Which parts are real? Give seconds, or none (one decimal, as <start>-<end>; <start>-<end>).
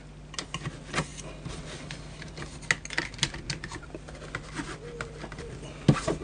0.0-6.2